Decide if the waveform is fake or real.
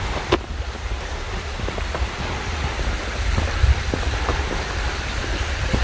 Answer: real